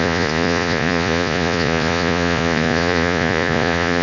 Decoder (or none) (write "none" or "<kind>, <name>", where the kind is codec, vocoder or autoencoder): vocoder, Vocos